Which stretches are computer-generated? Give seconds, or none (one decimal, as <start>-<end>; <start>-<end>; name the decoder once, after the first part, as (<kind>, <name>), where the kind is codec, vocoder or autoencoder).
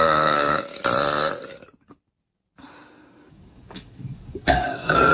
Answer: 0.0-0.7 (codec, DAC); 3.3-5.1